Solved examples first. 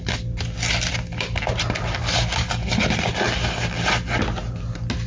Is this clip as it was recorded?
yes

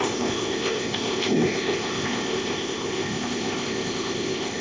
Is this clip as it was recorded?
no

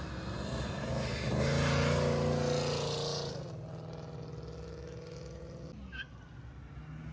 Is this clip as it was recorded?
yes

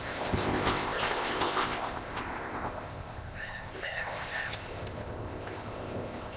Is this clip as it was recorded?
no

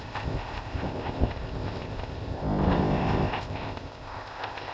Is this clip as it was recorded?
no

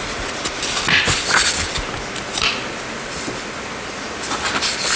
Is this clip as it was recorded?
yes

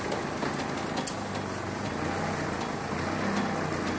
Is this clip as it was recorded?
yes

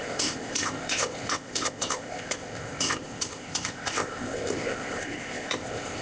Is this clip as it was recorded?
no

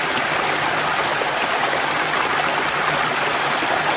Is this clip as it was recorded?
yes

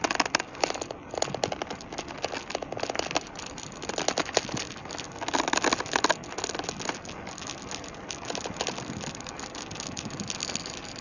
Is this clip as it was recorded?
yes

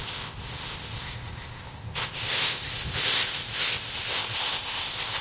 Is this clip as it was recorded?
no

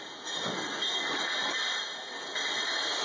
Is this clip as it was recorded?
yes